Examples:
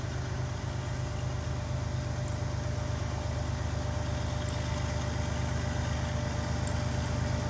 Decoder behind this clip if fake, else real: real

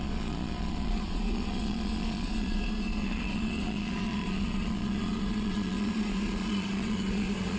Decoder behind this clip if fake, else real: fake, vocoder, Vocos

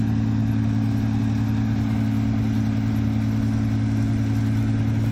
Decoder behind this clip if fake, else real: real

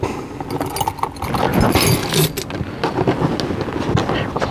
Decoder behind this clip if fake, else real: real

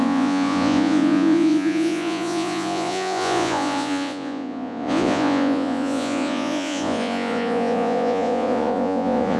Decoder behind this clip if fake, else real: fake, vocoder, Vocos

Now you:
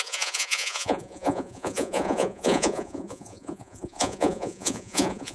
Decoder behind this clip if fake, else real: fake, vocoder, Vocos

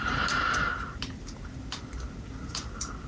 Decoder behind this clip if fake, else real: real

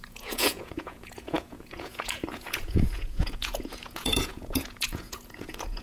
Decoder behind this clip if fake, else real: fake, vocoder, Vocos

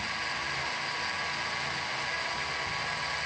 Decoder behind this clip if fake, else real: real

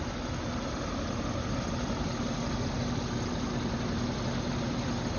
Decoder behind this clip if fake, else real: real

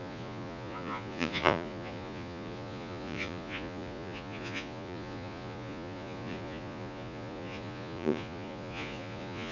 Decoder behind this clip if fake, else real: fake, vocoder, Vocos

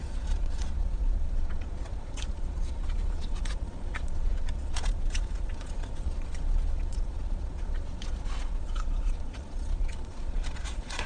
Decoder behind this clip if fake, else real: fake, vocoder, Vocos